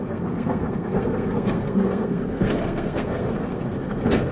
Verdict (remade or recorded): remade